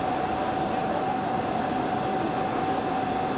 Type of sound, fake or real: real